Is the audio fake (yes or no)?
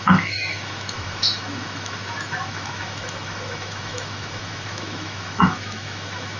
yes